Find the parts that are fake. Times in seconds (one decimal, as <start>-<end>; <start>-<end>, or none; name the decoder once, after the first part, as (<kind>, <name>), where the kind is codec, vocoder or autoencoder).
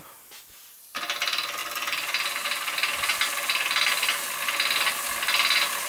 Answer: 1.6-2.4 (vocoder, BigVGAN v2)